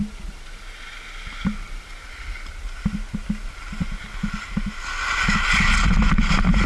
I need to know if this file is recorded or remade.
recorded